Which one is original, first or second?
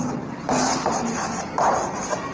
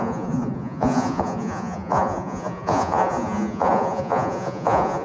first